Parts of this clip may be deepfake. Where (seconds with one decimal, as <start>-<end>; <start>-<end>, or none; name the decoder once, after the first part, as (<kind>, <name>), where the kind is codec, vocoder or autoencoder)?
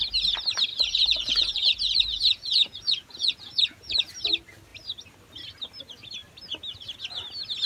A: 0.7-4.1 (vocoder, Vocos)